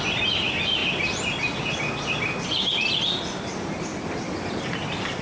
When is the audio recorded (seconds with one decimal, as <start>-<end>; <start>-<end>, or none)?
0.0-5.2